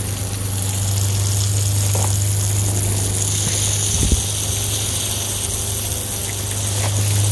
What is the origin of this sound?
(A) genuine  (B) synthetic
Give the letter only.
A